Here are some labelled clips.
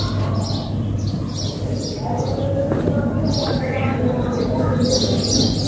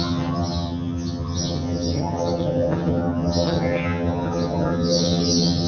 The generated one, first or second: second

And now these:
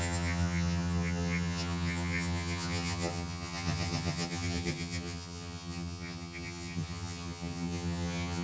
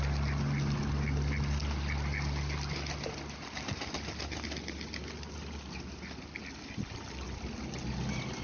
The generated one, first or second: first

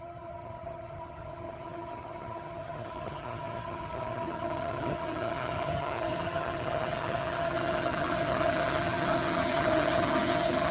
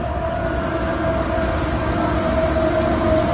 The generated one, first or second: first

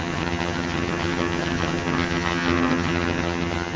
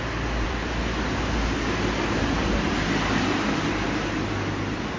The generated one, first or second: first